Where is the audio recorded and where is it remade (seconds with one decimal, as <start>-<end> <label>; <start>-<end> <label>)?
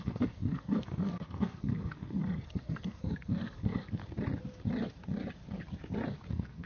0.0-4.0 remade; 4.0-6.3 recorded; 6.3-6.7 remade